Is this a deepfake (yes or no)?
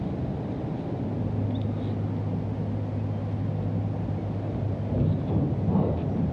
no